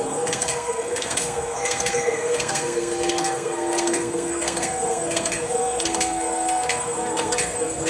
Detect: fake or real fake